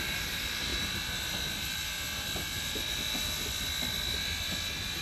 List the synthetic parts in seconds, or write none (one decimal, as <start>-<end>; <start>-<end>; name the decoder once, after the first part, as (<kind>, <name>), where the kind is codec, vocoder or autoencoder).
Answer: 0.0-0.7 (vocoder, BigVGAN v2); 3.6-5.0